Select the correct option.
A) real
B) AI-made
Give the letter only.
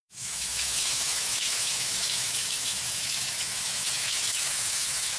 B